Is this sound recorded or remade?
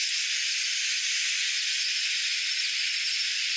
recorded